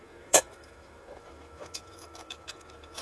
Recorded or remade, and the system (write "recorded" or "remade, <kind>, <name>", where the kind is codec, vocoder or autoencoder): remade, autoencoder, DAC-VAE